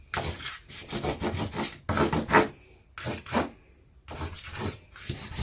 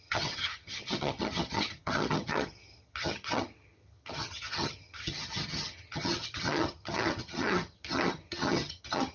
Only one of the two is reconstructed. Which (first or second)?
second